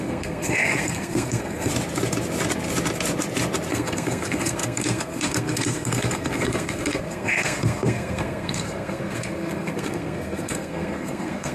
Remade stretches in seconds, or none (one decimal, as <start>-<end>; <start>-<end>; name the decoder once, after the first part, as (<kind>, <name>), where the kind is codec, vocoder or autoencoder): 0.0-1.7 (codec, SNAC); 3.7-11.5